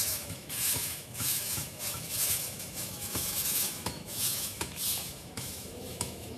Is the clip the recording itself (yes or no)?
no